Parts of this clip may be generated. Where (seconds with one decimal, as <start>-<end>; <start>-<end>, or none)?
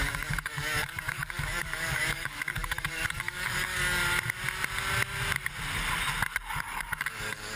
0.0-4.0; 6.5-7.6